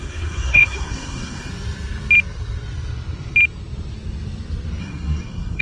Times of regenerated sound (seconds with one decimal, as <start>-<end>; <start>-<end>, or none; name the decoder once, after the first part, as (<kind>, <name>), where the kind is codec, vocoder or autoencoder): 0.0-1.5 (codec, SNAC); 4.8-5.6